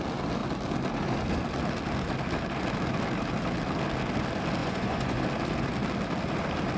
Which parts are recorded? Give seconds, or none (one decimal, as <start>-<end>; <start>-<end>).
0.0-4.6; 5.2-6.8